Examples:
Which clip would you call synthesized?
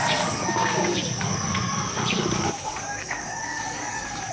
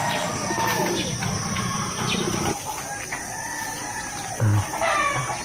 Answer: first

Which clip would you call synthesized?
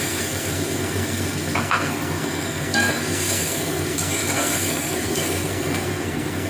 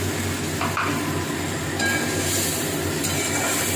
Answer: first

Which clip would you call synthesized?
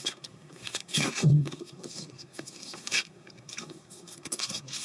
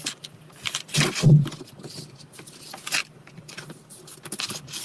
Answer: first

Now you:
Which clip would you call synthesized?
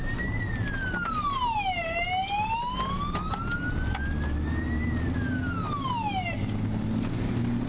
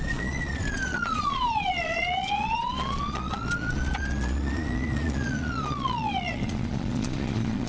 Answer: second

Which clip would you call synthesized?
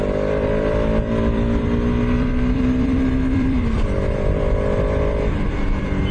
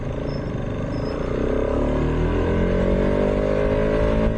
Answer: first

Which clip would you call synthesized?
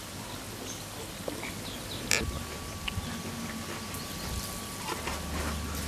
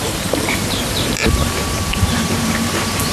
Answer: second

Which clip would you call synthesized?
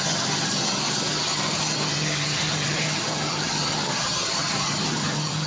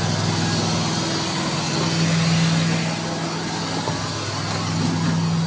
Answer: first